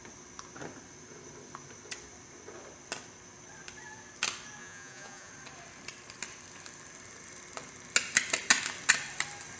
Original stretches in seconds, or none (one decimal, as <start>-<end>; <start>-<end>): 0.0-4.6; 5.3-9.6